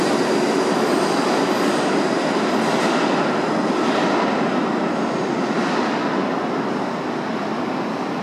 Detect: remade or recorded recorded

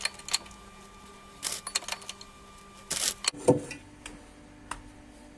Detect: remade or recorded recorded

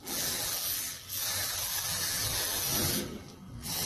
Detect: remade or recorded remade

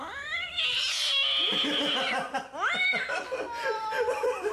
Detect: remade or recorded recorded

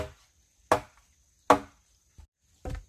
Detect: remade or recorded recorded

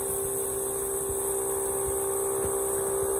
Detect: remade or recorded recorded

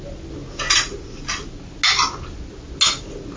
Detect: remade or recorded recorded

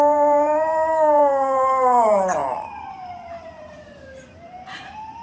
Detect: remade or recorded remade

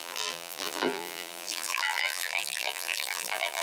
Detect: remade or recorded remade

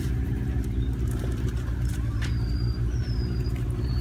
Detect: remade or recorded remade